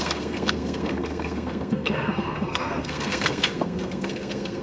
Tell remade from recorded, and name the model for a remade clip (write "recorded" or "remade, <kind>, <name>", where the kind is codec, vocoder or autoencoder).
remade, codec, SNAC